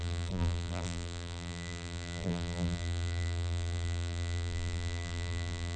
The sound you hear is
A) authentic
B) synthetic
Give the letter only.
B